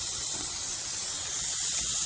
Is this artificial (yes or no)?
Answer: yes